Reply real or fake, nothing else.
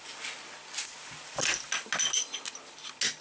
real